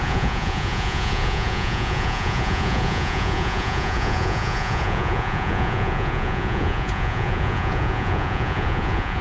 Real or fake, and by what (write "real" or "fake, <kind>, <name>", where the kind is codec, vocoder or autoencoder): fake, vocoder, Vocos